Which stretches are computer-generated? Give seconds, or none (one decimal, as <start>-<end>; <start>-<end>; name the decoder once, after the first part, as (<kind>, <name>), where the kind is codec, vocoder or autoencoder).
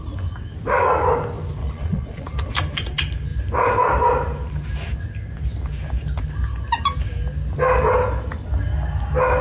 1.6-2.3 (vocoder, Vocos)